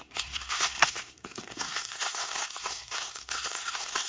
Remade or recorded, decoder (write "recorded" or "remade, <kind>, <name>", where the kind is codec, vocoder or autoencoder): remade, codec, SNAC